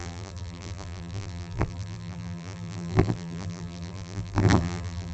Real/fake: fake